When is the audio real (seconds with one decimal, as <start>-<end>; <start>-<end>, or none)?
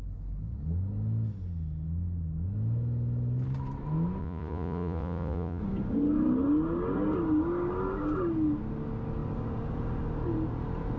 0.0-4.2; 5.6-11.0